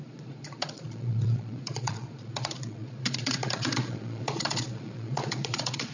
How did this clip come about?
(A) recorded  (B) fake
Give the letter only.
B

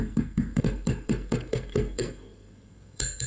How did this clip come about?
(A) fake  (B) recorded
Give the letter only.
A